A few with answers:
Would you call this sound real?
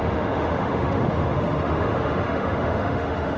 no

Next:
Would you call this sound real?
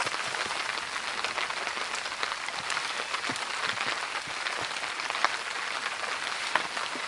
yes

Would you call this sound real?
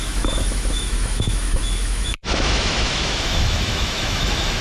no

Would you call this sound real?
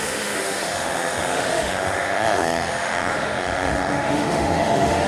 no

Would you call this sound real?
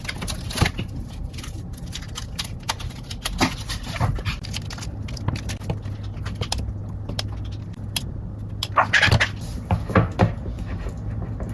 yes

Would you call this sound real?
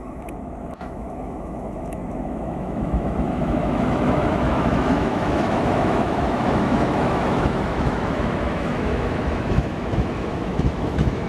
no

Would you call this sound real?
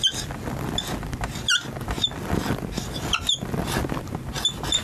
yes